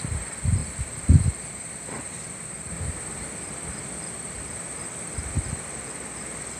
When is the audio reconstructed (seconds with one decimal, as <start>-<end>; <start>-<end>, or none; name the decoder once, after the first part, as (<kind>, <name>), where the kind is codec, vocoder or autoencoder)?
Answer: none